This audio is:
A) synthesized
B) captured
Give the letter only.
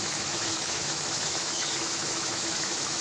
A